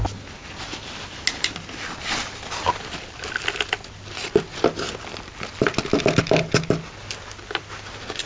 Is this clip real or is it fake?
real